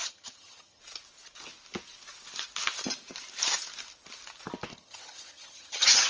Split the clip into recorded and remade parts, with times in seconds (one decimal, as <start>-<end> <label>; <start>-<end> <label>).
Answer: 0.0-0.8 remade; 0.8-4.7 recorded; 4.7-6.1 remade